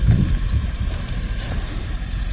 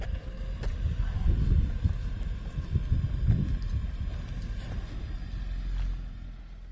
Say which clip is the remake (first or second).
first